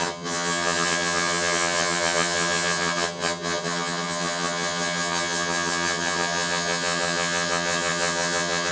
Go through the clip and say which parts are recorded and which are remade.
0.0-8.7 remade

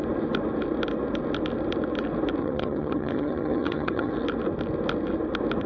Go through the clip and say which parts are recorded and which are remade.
0.0-2.4 recorded; 2.4-4.1 remade; 4.1-5.7 recorded